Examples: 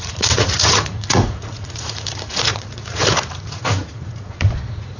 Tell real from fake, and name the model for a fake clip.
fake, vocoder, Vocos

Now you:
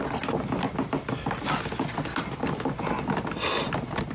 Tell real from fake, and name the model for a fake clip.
real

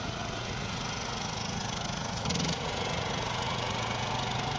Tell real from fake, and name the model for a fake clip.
fake, vocoder, Vocos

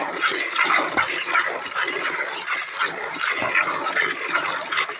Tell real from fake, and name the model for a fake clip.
real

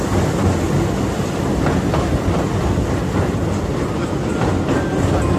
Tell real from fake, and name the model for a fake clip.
real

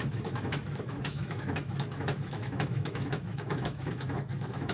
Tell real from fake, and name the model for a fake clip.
fake, autoencoder, DAC-VAE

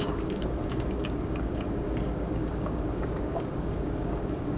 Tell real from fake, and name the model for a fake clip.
fake, codec, DAC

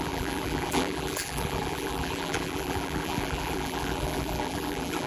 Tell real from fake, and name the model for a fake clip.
fake, vocoder, BigVGAN v2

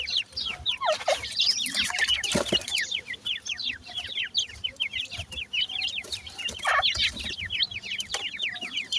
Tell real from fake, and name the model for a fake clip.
real